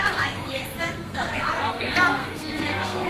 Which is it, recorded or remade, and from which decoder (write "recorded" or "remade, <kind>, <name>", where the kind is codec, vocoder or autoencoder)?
remade, codec, SNAC